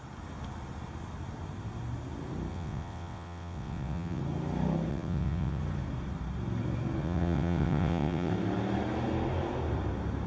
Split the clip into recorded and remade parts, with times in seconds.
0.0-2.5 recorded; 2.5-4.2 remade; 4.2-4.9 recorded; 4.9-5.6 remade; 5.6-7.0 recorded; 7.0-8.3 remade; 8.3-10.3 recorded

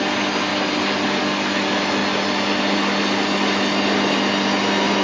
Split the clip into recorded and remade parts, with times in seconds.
0.0-5.0 recorded

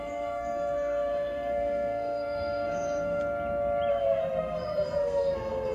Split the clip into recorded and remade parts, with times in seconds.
0.0-3.2 remade; 3.2-3.9 recorded; 3.9-5.7 remade

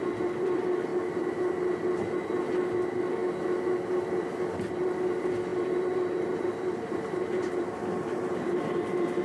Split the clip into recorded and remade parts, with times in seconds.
0.0-0.9 remade; 0.9-2.7 recorded; 2.7-3.2 remade; 3.2-4.7 recorded; 4.7-9.2 remade

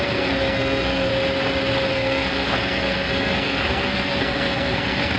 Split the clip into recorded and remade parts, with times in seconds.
0.0-1.1 remade; 1.1-1.9 recorded; 1.9-5.2 remade